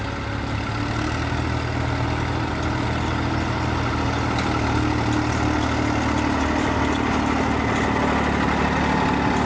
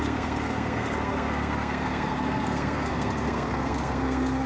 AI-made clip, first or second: second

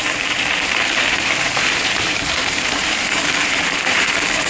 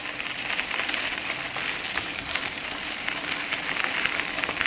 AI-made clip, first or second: first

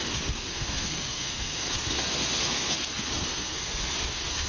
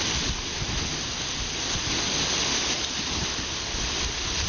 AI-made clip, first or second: first